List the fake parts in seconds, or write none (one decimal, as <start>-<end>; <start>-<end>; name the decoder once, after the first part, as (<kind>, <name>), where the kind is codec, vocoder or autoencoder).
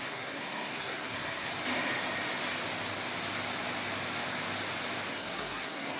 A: 0.0-1.5 (codec, SNAC); 5.1-6.0